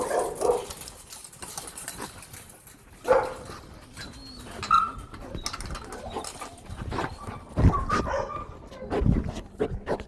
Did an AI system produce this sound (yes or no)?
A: no